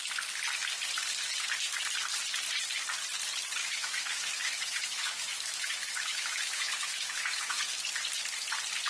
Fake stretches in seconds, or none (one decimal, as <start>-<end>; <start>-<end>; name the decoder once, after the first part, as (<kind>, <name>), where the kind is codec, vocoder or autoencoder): 3.6-7.6 (autoencoder, DAC-VAE)